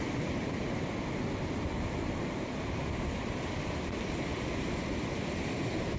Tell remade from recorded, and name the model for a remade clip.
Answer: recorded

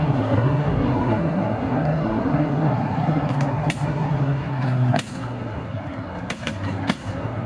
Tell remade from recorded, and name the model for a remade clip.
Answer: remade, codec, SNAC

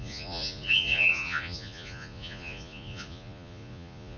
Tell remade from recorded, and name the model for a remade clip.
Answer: remade, vocoder, Vocos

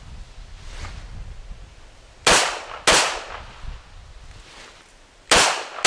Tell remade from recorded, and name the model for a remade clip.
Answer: recorded